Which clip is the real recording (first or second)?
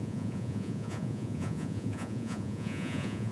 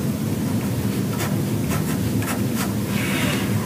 second